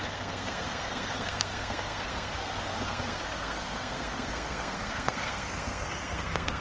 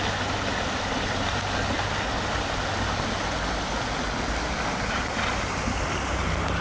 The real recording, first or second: second